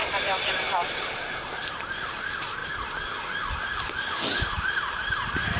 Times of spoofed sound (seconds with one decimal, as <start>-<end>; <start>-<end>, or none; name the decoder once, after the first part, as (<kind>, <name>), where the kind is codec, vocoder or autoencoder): 0.0-2.1 (vocoder, BigVGAN v2)

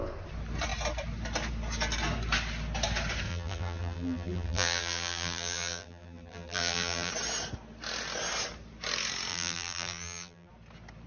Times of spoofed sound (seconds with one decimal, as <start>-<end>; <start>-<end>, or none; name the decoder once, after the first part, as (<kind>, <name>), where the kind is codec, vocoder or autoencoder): 3.3-7.1 (vocoder, BigVGAN v2); 9.3-10.5

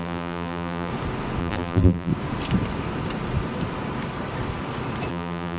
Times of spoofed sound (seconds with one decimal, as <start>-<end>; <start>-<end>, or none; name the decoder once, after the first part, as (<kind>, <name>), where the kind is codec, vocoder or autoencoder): 0.0-0.9 (vocoder, BigVGAN v2); 1.4-2.1; 5.1-5.6

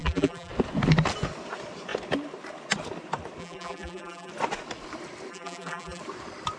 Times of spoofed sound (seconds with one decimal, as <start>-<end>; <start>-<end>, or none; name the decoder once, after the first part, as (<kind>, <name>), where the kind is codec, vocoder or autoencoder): 0.0-0.5 (vocoder, BigVGAN v2); 3.4-4.3; 5.3-6.0

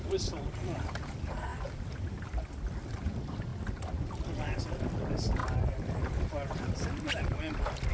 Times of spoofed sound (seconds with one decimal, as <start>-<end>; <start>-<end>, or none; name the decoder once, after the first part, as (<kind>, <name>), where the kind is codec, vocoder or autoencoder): 0.0-1.5 (vocoder, BigVGAN v2); 2.2-3.5; 4.6-7.9